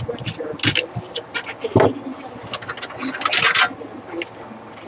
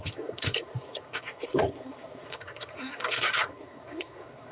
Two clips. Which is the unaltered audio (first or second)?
first